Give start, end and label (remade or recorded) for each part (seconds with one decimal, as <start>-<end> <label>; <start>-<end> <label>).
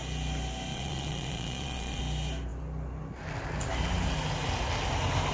0.0-0.7 recorded; 0.7-2.0 remade; 2.0-5.3 recorded